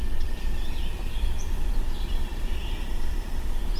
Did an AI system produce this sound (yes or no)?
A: no